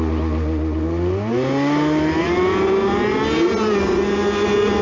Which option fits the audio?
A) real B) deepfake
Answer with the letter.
A